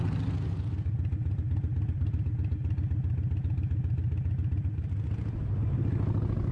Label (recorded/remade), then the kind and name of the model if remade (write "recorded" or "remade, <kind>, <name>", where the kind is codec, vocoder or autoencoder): recorded